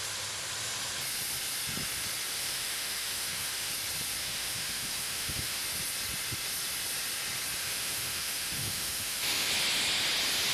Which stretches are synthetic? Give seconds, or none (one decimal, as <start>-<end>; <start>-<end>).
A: 2.3-3.7; 4.2-5.6; 7.6-9.5